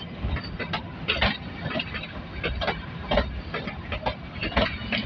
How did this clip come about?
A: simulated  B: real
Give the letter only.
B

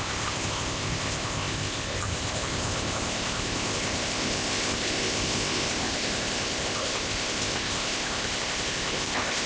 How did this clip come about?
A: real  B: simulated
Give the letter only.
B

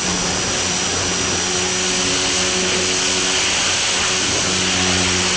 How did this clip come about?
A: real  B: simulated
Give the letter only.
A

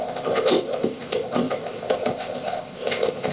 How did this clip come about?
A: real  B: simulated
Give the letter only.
B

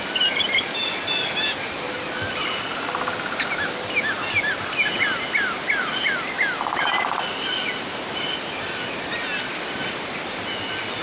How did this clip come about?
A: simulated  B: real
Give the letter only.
B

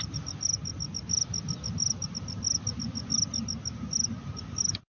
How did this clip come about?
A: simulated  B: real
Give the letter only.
B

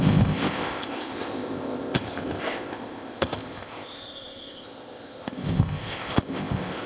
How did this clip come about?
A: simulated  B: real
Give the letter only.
A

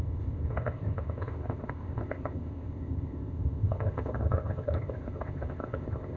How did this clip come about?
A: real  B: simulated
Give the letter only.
B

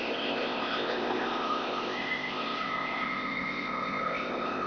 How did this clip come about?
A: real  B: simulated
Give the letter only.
B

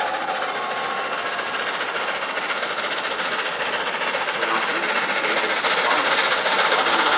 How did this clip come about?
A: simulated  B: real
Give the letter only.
B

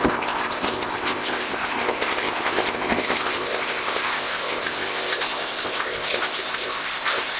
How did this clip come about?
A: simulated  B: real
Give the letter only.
A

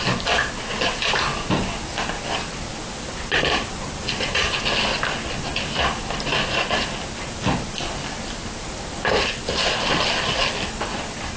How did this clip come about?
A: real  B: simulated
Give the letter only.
A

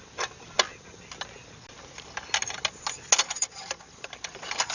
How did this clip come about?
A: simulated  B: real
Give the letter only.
B